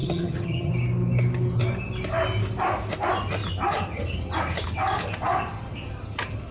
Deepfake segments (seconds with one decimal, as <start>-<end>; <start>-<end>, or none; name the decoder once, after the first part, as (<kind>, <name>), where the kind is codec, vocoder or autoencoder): 0.0-0.7 (vocoder, HiFi-GAN)